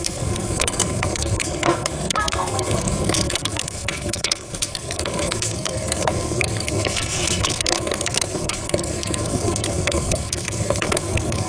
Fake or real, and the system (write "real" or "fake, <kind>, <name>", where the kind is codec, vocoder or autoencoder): fake, codec, SNAC